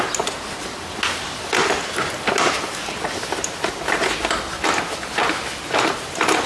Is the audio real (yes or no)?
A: yes